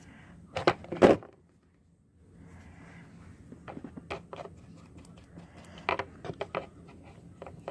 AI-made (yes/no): no